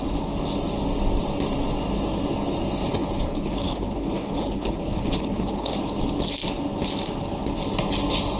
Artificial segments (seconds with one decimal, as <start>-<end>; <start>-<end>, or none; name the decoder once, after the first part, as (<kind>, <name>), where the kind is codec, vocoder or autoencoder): 2.9-5.7 (codec, HILCodec)